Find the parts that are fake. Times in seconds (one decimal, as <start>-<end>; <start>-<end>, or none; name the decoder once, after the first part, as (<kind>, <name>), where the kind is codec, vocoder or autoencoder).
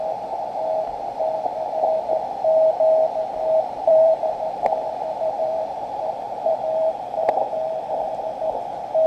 3.8-8.1 (vocoder, BigVGAN v2)